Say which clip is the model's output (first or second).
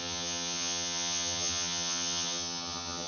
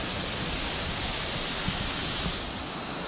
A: first